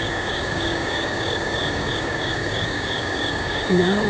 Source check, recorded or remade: remade